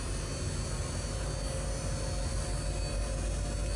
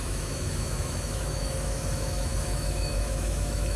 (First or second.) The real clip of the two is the first